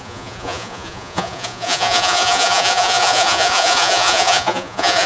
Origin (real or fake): fake